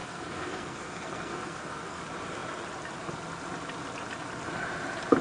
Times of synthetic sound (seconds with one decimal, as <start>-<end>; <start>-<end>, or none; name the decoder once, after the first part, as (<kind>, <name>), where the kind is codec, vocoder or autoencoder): 0.0-2.0 (codec, SNAC)